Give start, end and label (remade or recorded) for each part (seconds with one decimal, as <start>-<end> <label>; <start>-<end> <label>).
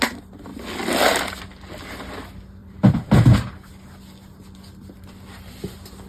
0.0-2.6 recorded; 2.6-3.1 remade; 3.1-6.1 recorded